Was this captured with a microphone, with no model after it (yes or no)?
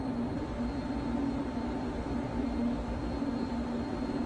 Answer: yes